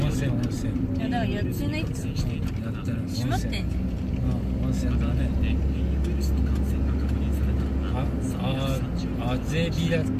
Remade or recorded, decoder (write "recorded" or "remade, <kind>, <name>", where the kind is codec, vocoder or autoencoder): recorded